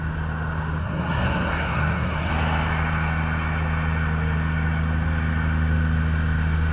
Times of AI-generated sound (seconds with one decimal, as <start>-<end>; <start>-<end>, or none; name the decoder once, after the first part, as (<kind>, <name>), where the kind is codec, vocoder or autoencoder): 0.8-2.3 (codec, SNAC)